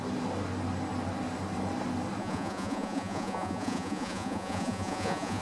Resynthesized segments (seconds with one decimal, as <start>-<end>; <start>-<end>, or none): 2.2-5.4